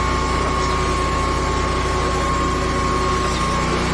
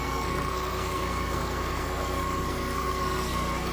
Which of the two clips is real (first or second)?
first